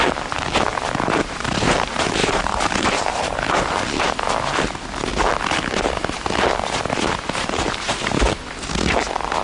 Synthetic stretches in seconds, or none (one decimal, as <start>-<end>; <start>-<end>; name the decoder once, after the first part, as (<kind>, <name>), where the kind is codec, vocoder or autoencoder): 0.7-3.7 (vocoder, BigVGAN v2)